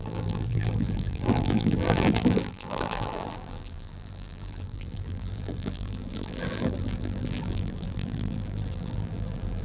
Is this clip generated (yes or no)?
yes